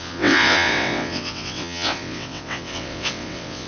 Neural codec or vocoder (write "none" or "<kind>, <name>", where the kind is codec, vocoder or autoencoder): vocoder, WaveNeXt